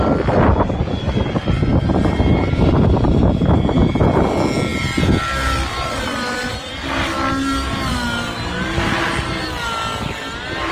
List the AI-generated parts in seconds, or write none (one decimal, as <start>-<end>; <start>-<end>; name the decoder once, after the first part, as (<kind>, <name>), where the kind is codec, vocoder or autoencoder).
1.7-3.9 (vocoder, BigVGAN v2)